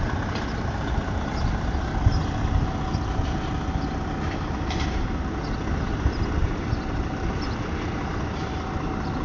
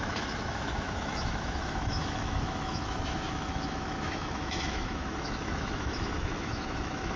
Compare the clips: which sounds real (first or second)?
first